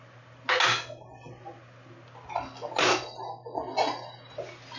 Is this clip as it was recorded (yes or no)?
yes